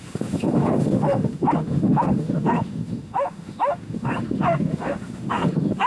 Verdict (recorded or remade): remade